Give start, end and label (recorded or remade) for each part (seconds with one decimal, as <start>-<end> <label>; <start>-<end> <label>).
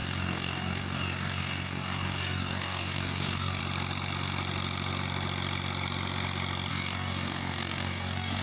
0.0-3.6 remade; 3.6-6.7 recorded; 6.7-8.4 remade